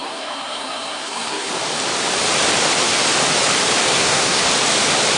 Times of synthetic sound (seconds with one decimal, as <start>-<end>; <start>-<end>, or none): 0.0-1.5; 3.9-4.4